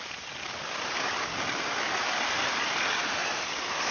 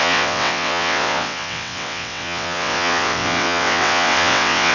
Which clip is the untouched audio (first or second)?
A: first